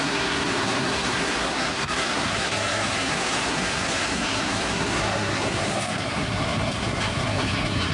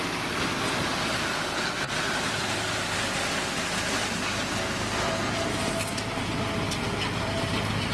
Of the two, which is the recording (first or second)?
second